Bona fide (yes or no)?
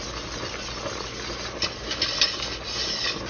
yes